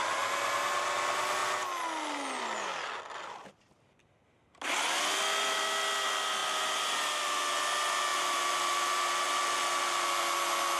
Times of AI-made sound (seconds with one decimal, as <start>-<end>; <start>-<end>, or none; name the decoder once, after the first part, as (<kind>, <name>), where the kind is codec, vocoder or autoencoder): 8.1-9.2 (vocoder, BigVGAN v2)